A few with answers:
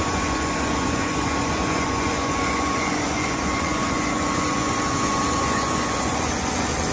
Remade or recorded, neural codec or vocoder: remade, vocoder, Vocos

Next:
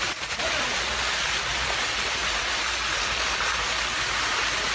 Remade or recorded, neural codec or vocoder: recorded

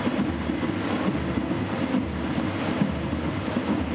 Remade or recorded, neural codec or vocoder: recorded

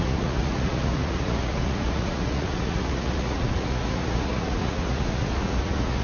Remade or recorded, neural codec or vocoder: remade, vocoder, Vocos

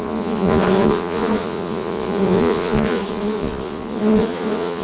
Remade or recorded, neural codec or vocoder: remade, vocoder, Vocos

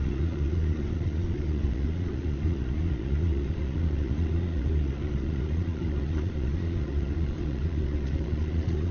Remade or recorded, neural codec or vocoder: remade, vocoder, Vocos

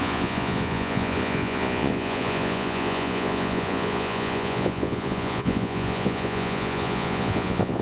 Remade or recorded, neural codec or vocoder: remade, vocoder, Vocos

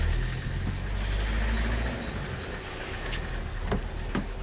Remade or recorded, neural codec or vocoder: recorded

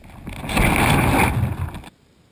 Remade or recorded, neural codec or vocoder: recorded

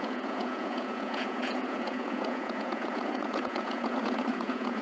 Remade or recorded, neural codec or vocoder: remade, vocoder, Vocos